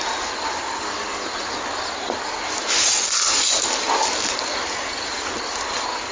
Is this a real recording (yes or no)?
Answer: yes